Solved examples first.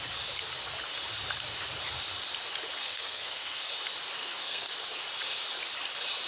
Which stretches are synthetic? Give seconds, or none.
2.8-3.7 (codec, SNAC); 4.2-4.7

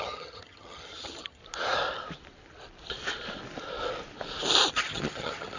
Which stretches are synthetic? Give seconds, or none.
0.0-1.4 (vocoder, HiFi-GAN); 4.7-5.6

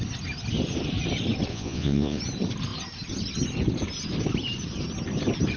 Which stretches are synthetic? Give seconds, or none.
1.5-2.2 (vocoder, Vocos)

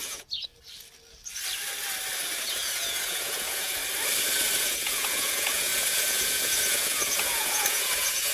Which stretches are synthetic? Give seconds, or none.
0.0-0.5 (vocoder, Vocos); 2.4-3.8; 4.6-8.3

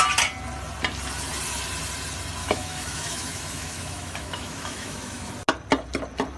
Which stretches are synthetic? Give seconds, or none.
2.4-5.3 (autoencoder, DAC-VAE)

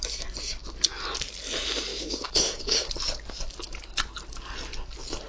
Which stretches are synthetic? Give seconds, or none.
1.9-2.9 (codec, DAC)

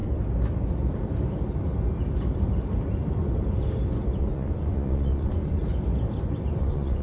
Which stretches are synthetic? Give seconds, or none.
4.2-5.6 (vocoder, Vocos); 6.6-7.0

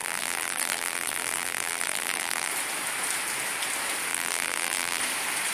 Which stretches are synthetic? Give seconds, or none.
0.0-2.5 (vocoder, BigVGAN v2); 4.1-5.0